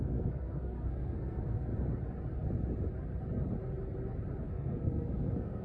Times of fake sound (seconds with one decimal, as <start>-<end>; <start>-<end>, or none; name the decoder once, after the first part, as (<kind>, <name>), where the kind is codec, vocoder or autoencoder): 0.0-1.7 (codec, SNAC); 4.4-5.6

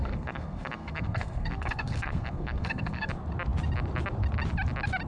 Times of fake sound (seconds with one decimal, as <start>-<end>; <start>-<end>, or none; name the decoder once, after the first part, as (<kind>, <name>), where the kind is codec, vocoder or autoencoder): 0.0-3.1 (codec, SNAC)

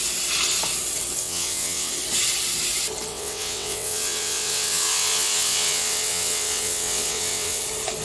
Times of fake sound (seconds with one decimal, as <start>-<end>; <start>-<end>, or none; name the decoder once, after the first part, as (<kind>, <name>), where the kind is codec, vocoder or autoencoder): 1.2-1.9 (vocoder, WaveNeXt); 3.1-7.6

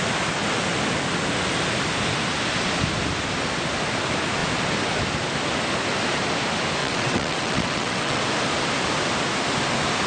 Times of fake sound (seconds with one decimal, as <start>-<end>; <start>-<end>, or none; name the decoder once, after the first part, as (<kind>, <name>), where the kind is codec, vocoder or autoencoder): 6.8-8.2 (vocoder, WaveNeXt)

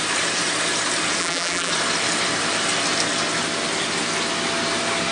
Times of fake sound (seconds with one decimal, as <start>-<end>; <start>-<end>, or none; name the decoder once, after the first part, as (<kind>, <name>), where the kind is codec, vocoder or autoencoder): 1.2-1.7 (vocoder, BigVGAN v2)

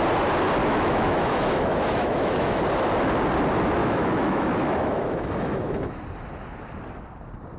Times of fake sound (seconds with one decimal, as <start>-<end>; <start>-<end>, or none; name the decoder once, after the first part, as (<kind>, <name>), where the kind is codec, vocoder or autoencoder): 0.6-2.6 (autoencoder, DAC-VAE); 3.8-6.0

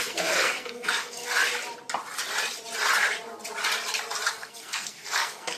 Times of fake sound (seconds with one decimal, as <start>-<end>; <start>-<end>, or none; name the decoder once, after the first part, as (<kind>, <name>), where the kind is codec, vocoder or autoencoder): 0.0-1.4 (codec, SNAC); 4.3-5.6

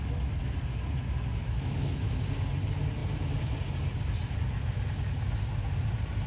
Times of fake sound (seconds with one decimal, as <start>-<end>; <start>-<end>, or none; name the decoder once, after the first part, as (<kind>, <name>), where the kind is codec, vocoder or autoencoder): 1.4-2.2 (autoencoder, DAC-VAE)